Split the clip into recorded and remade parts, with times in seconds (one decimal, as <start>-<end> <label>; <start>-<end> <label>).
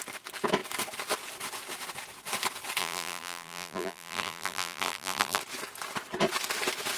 0.0-2.8 recorded; 2.8-5.4 remade; 5.4-7.0 recorded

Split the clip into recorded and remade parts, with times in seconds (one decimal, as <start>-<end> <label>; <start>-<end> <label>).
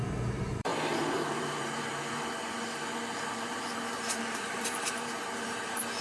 0.0-0.7 remade; 0.7-1.3 recorded; 1.3-2.8 remade; 2.8-3.3 recorded; 3.3-6.0 remade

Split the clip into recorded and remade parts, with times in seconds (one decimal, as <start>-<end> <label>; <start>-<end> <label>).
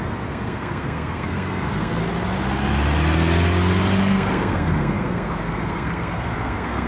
0.0-2.0 remade; 2.0-4.0 recorded; 4.0-6.9 remade